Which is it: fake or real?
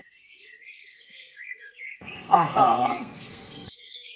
fake